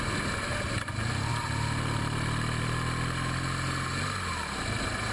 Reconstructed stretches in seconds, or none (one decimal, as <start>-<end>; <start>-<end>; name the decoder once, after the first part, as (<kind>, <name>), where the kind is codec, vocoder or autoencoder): none